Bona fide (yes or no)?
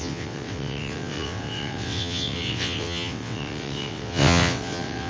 no